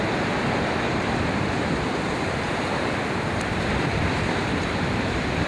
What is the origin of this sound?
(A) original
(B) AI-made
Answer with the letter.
B